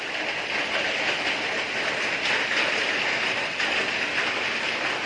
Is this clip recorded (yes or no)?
yes